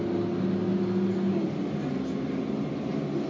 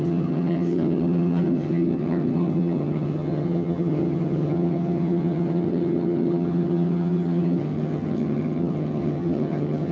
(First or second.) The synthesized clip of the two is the second